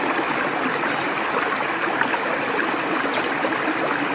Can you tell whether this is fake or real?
real